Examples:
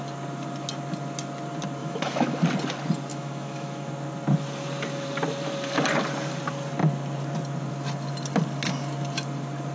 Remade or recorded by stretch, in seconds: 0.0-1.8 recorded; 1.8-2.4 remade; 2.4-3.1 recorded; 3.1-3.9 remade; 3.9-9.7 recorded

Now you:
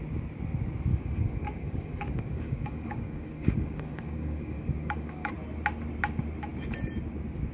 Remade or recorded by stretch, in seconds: 0.0-0.9 recorded; 0.9-5.3 remade; 5.3-7.5 recorded

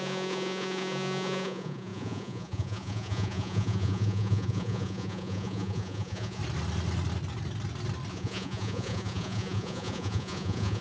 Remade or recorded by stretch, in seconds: 0.0-6.4 remade; 6.4-8.1 recorded; 8.1-10.8 remade

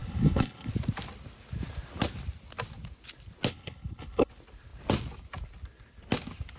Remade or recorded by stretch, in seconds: 0.0-0.7 remade; 0.7-3.5 recorded; 3.5-4.3 remade; 4.3-6.6 recorded

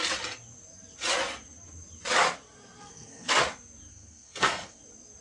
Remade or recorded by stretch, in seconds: 0.0-2.8 recorded; 2.8-3.3 remade; 3.3-3.9 recorded; 3.9-4.8 remade; 4.8-5.2 recorded